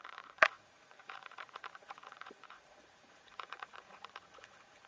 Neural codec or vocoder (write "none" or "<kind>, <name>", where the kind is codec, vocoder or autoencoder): vocoder, Vocos